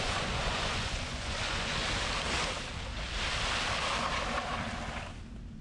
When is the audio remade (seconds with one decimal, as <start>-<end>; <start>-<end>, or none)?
0.0-1.8